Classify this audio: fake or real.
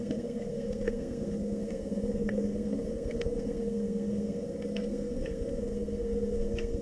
fake